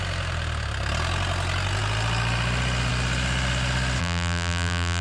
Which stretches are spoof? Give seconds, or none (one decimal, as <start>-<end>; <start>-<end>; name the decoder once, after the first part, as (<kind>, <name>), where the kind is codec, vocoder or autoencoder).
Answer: 4.0-5.0 (vocoder, BigVGAN v2)